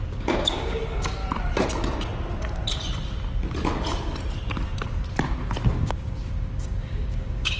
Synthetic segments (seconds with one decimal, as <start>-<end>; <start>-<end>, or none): 0.0-1.2; 5.8-7.6